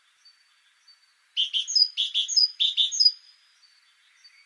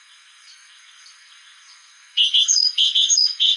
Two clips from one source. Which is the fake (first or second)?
second